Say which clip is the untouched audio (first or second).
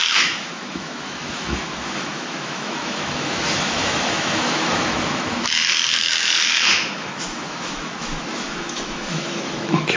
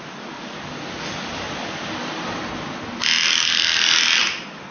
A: second